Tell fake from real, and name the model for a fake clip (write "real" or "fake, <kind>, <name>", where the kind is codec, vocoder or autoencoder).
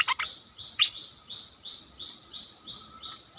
real